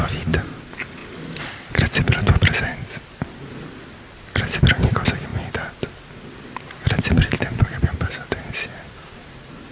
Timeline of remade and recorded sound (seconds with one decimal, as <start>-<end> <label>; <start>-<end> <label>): 0.0-1.0 recorded; 1.0-3.4 remade; 3.4-5.3 recorded; 5.3-6.7 remade; 6.7-7.6 recorded; 7.6-9.0 remade; 9.0-9.7 recorded